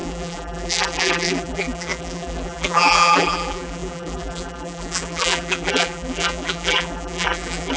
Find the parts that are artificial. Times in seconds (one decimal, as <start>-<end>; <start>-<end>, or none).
0.0-7.8